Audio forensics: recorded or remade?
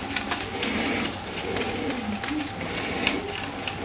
recorded